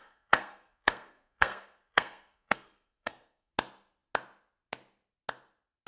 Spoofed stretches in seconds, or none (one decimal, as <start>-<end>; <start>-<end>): 0.0-3.5